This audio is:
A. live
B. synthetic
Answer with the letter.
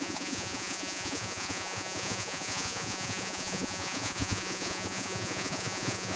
B